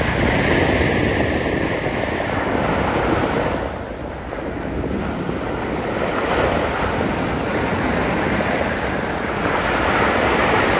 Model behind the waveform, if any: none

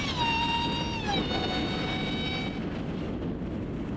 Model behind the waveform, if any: none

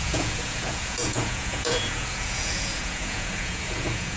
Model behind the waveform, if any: vocoder, Vocos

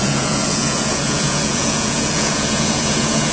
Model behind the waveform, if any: vocoder, Vocos